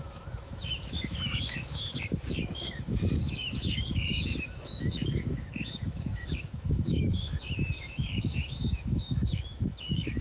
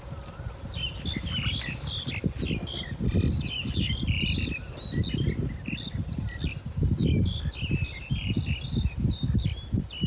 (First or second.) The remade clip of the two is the first